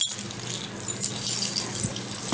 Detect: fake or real real